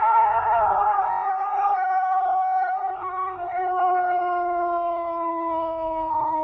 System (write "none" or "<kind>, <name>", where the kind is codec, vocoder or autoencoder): codec, SNAC